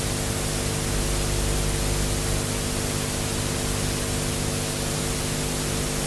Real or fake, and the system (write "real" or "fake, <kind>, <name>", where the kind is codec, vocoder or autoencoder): real